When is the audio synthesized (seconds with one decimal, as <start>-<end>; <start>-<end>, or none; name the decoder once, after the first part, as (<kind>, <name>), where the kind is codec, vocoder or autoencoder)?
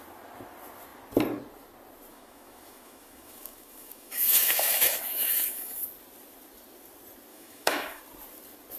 2.1-5.8 (autoencoder, DAC-VAE); 7.3-8.0